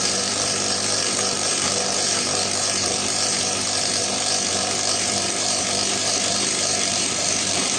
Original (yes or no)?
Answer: no